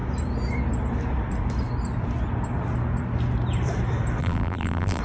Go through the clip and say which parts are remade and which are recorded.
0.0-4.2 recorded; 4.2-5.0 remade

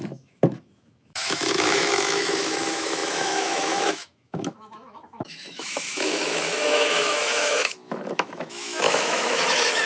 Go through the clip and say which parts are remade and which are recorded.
0.0-9.9 remade

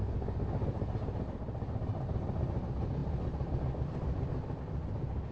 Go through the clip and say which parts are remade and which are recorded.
0.0-5.3 recorded

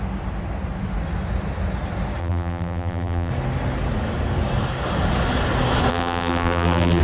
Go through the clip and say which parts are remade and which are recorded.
0.0-2.2 recorded; 2.2-3.3 remade; 3.3-5.9 recorded; 5.9-7.0 remade